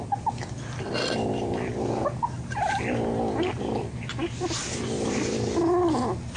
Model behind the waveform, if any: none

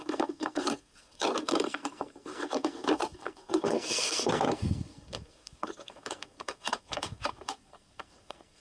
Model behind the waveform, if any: codec, SNAC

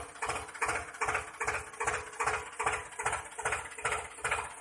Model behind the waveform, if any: none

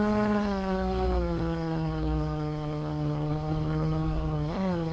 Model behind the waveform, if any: codec, SNAC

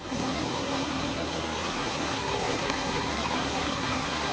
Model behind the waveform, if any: codec, SNAC